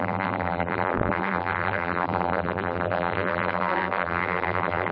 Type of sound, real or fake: fake